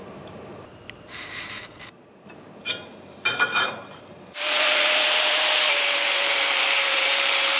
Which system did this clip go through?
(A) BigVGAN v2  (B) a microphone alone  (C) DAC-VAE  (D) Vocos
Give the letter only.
A